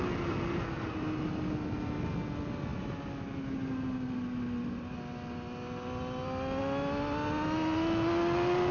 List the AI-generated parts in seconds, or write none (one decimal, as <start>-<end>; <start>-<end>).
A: none